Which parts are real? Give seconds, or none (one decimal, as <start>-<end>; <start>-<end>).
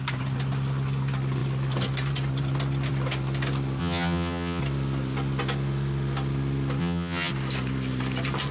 0.0-3.8; 4.6-6.8; 7.3-8.5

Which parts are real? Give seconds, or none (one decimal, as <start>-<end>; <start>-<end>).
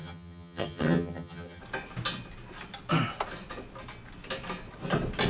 1.6-5.3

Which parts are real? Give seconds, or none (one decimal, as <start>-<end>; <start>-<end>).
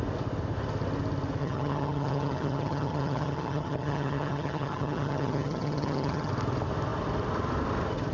0.0-1.4; 6.3-8.1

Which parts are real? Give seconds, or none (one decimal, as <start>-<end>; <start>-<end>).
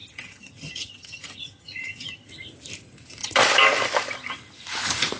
2.3-5.2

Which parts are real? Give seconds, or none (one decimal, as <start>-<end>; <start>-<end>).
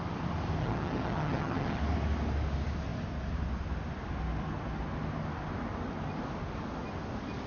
0.0-0.6; 1.8-7.5